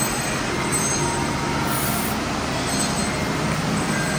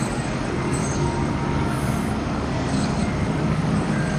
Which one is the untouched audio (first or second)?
first